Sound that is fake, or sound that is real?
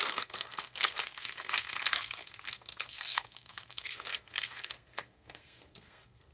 fake